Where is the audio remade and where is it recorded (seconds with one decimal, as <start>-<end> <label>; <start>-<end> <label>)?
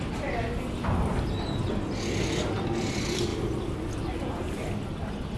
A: 0.0-5.4 recorded